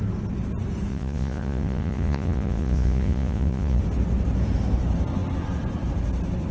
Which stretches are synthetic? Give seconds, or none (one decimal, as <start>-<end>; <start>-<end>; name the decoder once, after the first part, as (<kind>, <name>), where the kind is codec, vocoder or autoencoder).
0.9-3.8 (vocoder, Vocos)